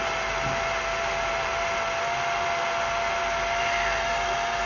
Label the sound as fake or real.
real